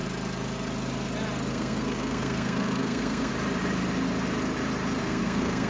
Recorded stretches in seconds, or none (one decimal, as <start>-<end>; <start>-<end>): 0.0-1.5; 3.3-5.0